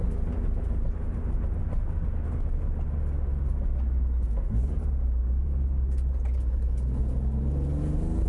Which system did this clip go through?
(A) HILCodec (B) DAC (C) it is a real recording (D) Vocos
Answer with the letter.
C